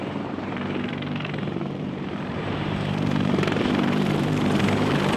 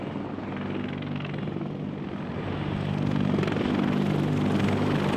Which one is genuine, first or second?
second